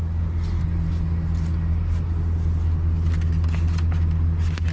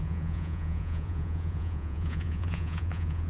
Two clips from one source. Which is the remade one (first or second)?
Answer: second